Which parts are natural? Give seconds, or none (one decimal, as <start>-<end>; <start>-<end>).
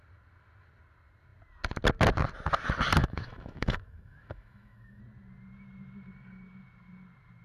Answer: 0.0-3.0; 5.0-7.4